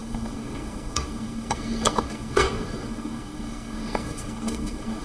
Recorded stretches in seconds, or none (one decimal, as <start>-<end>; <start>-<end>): none